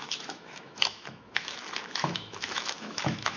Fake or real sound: fake